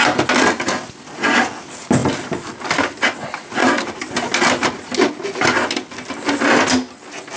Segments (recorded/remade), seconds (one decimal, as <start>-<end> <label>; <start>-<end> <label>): 0.0-2.0 recorded; 2.0-2.6 remade; 2.6-3.6 recorded; 3.6-4.1 remade; 4.1-7.4 recorded